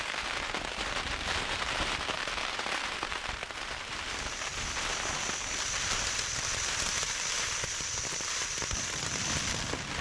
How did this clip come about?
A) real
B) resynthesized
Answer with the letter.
B